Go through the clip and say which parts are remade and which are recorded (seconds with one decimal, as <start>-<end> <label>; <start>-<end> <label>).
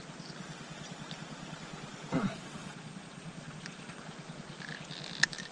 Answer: 0.0-2.2 recorded; 2.2-4.0 remade; 4.0-5.5 recorded